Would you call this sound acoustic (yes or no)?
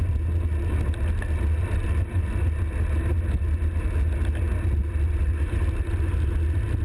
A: yes